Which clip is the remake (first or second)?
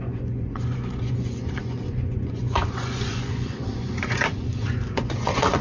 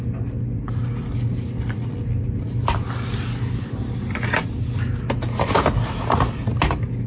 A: first